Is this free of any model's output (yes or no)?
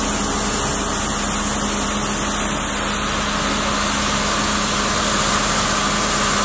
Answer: yes